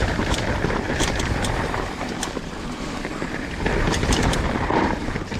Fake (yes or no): yes